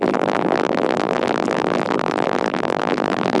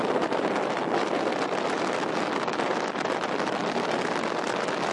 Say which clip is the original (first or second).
second